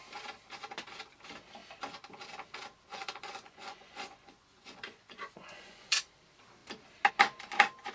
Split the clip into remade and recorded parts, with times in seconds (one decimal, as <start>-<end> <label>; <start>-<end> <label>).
0.0-2.9 recorded; 2.9-6.0 remade; 6.0-7.9 recorded